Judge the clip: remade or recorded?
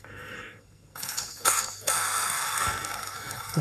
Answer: remade